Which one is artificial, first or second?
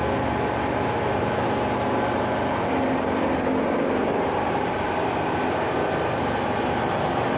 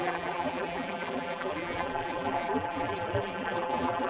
second